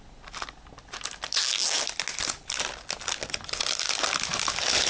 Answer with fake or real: real